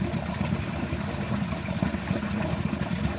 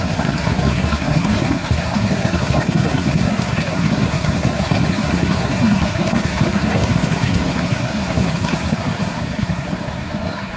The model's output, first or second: second